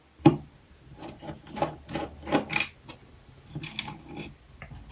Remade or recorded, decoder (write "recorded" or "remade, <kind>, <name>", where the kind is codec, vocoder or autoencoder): recorded